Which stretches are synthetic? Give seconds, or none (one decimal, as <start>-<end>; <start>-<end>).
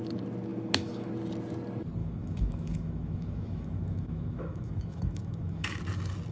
0.5-1.1; 2.0-5.8